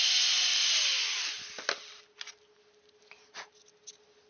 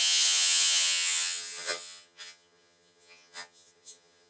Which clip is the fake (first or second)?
second